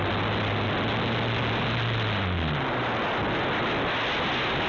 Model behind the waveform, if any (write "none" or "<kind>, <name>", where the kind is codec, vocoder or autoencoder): none